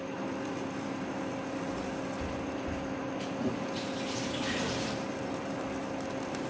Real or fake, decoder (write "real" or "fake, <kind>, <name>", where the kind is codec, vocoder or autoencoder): real